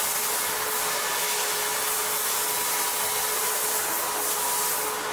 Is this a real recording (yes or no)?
yes